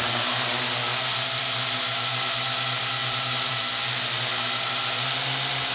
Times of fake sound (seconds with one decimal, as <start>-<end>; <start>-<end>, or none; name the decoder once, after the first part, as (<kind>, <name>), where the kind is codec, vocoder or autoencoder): none

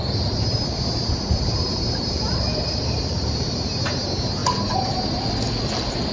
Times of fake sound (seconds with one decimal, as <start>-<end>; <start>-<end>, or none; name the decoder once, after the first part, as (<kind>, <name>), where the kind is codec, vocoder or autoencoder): 0.0-3.7 (vocoder, BigVGAN v2)

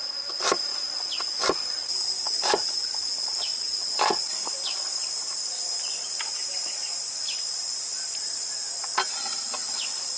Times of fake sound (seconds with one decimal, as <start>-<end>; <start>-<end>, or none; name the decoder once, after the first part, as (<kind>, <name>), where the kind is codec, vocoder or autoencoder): none

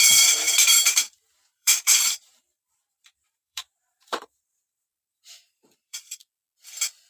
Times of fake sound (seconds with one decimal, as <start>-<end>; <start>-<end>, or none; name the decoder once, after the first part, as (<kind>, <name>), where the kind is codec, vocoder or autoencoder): 0.0-6.2 (vocoder, BigVGAN v2)

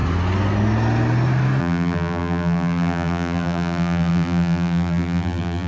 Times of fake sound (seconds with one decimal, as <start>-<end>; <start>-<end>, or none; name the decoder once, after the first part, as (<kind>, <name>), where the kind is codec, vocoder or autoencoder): 1.6-5.7 (vocoder, BigVGAN v2)

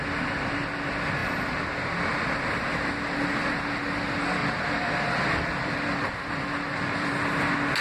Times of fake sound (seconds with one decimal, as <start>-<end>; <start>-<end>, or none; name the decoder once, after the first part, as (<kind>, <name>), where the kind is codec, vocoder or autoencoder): 4.4-7.1 (vocoder, BigVGAN v2)

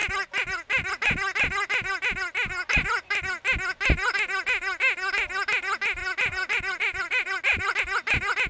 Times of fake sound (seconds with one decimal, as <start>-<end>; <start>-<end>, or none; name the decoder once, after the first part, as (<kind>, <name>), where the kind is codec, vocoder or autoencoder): 0.0-0.9 (vocoder, BigVGAN v2); 6.0-7.8

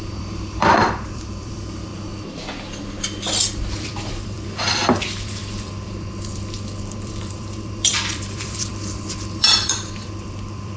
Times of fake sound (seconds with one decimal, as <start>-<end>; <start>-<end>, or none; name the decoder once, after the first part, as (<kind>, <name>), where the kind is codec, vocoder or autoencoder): 0.0-1.9 (vocoder, BigVGAN v2); 3.7-10.8